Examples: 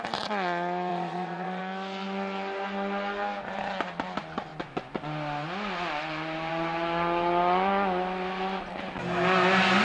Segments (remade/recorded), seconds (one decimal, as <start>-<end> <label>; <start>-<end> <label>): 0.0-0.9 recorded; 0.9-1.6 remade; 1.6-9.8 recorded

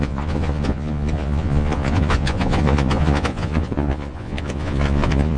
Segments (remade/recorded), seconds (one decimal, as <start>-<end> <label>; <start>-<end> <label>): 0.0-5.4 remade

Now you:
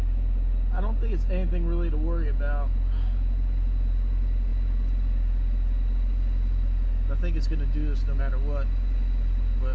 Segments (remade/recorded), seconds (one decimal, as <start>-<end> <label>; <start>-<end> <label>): 0.0-9.7 recorded

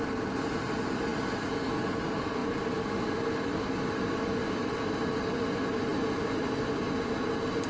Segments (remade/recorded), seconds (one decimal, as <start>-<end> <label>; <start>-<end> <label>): 0.0-7.7 recorded

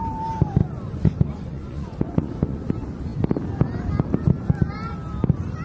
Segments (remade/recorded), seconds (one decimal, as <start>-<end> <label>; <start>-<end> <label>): 0.0-0.6 recorded; 0.6-2.7 remade; 2.7-5.6 recorded